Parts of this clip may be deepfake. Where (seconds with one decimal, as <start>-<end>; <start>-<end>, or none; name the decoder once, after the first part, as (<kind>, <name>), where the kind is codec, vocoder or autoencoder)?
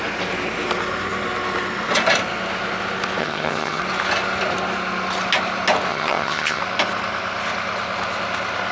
3.2-3.8 (vocoder, HiFi-GAN); 5.9-6.6